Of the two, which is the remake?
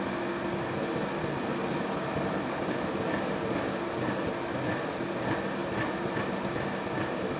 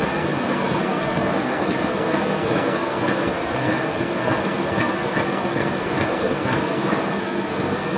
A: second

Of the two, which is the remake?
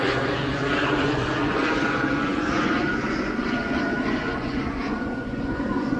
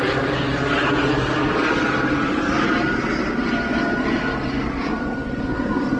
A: first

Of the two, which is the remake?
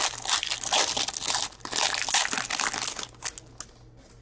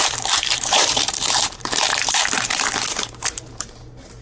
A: second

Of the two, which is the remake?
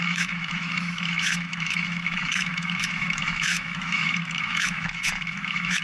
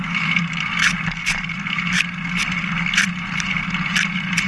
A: first